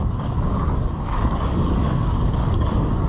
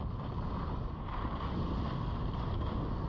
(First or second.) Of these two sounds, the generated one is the first